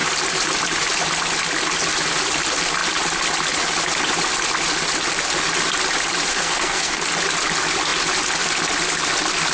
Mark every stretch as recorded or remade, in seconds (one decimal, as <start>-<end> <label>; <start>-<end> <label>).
0.0-6.3 recorded; 6.3-7.0 remade; 7.0-9.5 recorded